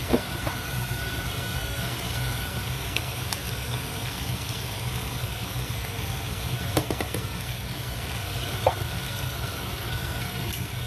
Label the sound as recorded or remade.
remade